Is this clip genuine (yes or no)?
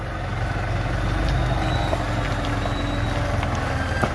yes